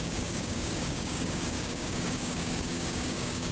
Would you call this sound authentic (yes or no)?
no